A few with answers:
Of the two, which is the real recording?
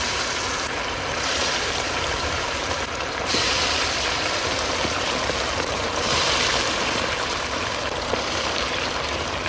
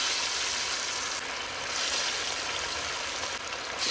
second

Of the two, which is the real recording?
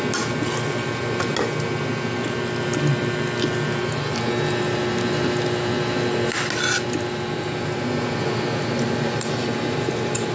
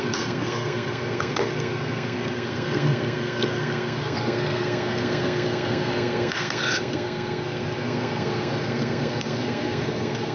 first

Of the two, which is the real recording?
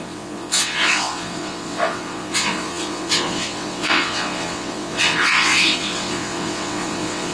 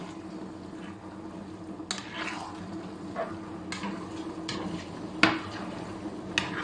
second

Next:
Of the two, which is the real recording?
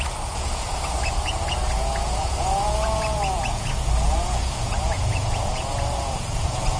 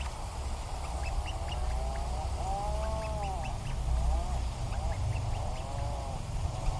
second